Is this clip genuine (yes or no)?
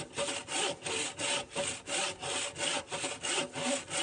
yes